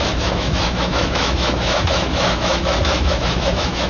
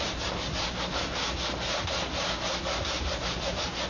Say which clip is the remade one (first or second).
first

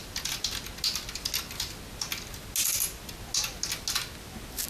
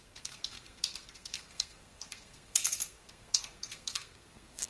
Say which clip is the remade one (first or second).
second